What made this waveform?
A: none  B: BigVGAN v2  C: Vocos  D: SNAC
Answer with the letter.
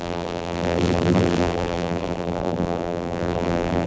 B